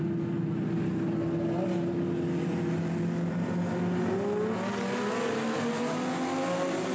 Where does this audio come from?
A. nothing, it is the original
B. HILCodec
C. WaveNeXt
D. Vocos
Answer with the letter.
A